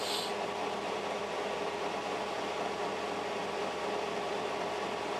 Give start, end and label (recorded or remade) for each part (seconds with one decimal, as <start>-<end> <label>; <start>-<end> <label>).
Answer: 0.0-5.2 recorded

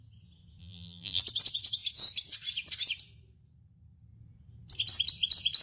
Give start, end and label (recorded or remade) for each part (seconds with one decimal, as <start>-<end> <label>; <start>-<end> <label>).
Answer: 0.0-0.6 recorded; 0.6-1.2 remade; 1.2-5.6 recorded

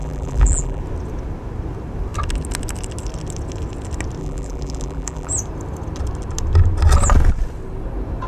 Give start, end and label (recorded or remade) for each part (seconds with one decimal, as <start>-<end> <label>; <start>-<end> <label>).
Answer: 0.0-0.8 remade; 0.8-4.2 recorded; 4.2-5.3 remade; 5.3-8.3 recorded